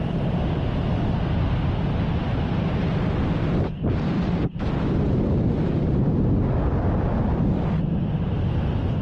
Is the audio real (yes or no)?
yes